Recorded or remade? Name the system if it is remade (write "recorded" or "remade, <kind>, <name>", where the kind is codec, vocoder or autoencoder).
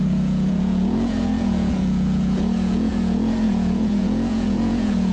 remade, vocoder, Vocos